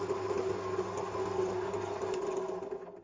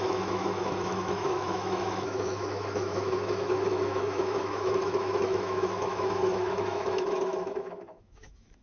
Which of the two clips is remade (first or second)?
second